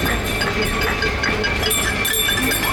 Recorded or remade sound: recorded